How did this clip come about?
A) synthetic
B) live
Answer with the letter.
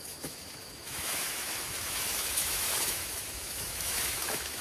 A